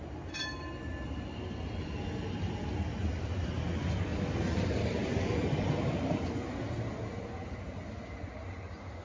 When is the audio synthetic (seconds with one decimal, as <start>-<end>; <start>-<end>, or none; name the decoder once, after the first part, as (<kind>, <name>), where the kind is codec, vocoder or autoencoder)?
4.1-6.4 (vocoder, BigVGAN v2)